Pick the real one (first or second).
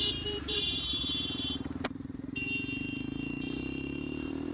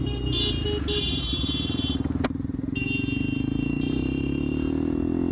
second